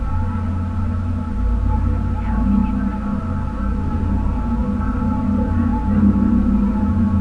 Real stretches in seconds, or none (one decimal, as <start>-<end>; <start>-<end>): 0.0-7.2